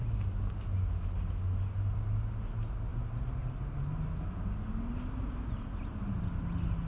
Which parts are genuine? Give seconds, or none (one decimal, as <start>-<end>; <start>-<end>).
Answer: 0.0-2.9; 4.2-6.9